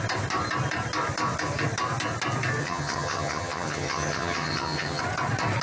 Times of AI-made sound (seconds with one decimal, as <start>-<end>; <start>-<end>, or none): 2.6-5.0